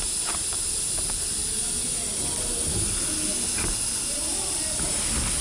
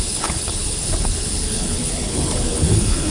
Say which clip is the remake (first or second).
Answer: second